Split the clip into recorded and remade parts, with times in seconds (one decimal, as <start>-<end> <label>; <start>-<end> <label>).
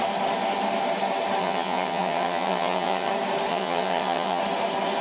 0.0-1.4 recorded; 1.4-3.1 remade; 3.1-3.5 recorded; 3.5-4.4 remade; 4.4-5.0 recorded